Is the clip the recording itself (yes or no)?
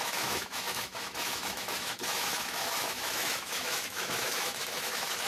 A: no